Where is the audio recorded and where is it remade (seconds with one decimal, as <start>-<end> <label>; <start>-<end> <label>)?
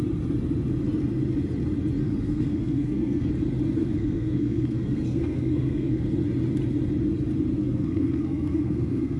0.0-2.0 recorded; 2.0-3.3 remade; 3.3-3.8 recorded; 3.8-6.0 remade; 6.0-7.5 recorded; 7.5-9.2 remade